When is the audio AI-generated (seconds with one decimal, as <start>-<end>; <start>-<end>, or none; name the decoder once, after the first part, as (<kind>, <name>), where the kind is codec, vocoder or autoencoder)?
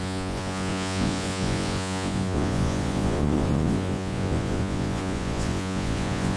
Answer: 0.0-6.4 (vocoder, Vocos)